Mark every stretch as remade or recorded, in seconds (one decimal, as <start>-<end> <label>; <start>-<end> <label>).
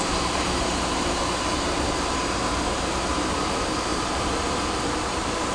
0.0-5.5 remade